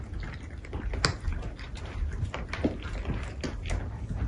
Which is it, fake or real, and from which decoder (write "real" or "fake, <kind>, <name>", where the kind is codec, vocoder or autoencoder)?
real